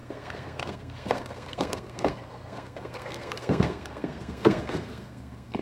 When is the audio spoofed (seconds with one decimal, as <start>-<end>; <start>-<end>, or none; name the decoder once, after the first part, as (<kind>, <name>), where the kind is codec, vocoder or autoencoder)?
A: 0.0-5.6 (codec, SNAC)